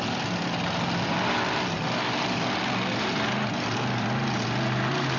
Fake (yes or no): no